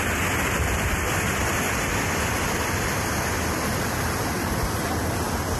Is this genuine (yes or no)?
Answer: yes